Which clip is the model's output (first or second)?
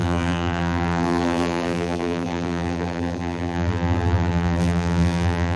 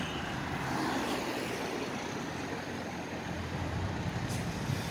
first